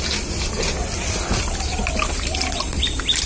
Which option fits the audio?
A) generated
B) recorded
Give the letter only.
B